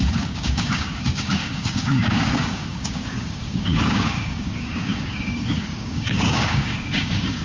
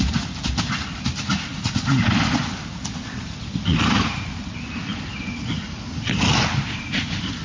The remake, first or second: first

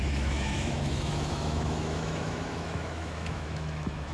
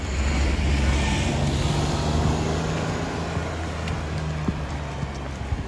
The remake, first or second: first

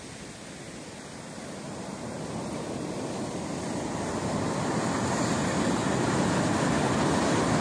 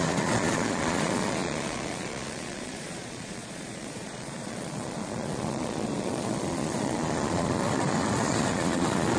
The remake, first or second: second